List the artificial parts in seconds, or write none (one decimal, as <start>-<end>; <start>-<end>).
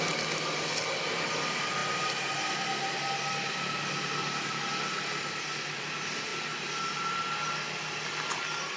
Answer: none